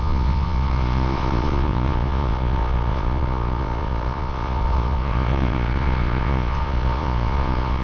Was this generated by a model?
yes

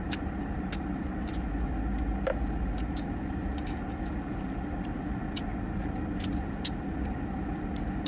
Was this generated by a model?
no